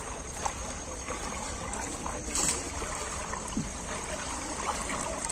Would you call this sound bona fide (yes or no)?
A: yes